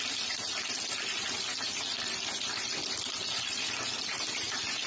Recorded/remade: recorded